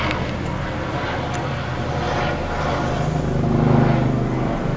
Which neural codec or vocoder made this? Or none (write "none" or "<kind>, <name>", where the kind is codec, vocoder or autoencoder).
none